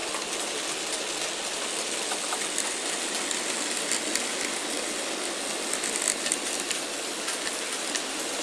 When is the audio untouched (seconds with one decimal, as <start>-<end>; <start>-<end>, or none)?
0.0-8.4